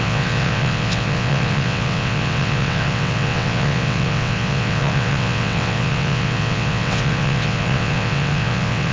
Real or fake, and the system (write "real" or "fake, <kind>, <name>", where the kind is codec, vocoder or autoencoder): fake, vocoder, WaveNeXt